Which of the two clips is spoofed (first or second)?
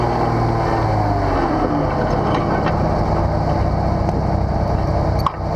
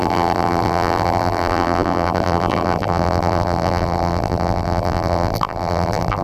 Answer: second